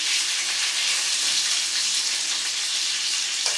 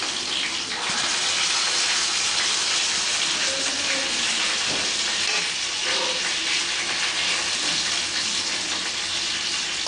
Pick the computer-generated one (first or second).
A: first